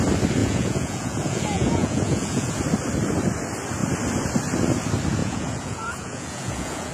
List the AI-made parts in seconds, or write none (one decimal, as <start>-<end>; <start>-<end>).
0.4-2.6; 5.2-6.9